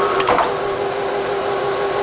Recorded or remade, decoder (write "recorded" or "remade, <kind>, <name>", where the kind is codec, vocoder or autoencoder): recorded